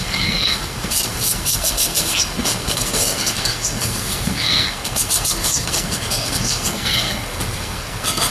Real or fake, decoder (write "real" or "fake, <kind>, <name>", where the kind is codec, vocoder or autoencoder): fake, codec, SNAC